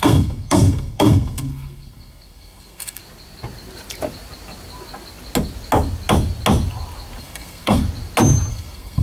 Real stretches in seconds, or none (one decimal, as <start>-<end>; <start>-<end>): 3.0-7.2; 7.8-8.5